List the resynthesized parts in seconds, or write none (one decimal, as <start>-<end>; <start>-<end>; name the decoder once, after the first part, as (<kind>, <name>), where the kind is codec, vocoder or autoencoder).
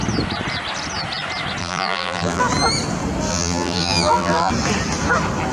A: 1.6-2.4 (vocoder, BigVGAN v2); 3.3-4.5